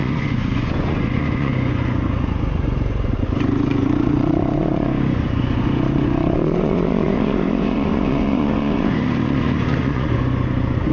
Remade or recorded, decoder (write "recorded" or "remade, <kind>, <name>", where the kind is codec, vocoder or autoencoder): remade, vocoder, Vocos